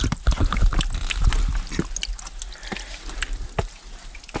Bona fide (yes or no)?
yes